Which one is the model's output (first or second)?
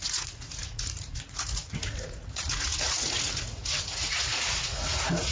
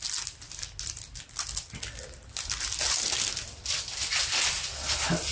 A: first